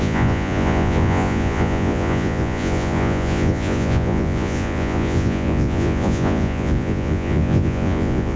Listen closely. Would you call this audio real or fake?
fake